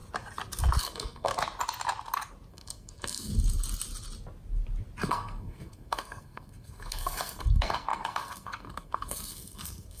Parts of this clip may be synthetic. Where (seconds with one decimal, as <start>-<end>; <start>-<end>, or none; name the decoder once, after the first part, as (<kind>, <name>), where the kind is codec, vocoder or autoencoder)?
0.8-1.3 (codec, SNAC); 2.5-3.3; 5.0-10.0